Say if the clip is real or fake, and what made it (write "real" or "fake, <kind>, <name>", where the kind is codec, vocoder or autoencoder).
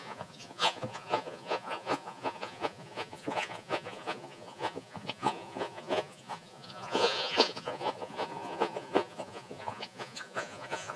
fake, vocoder, Vocos